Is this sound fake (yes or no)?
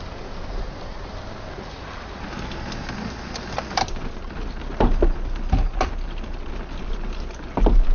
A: no